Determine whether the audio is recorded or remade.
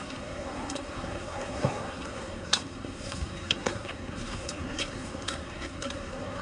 remade